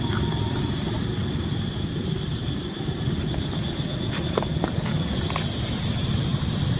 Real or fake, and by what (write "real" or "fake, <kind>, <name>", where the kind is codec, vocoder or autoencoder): real